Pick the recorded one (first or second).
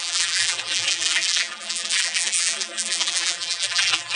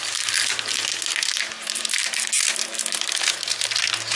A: second